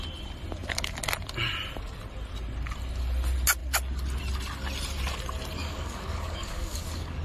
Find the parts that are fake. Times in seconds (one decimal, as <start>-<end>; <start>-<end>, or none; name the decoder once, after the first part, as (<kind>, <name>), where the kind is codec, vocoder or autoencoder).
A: 5.6-7.2 (codec, DAC)